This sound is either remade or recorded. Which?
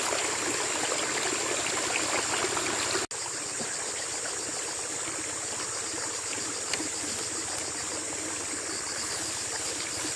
recorded